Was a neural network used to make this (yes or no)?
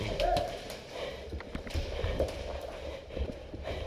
yes